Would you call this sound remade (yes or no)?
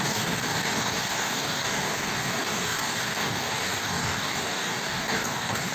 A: yes